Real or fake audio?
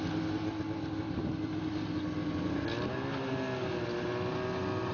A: real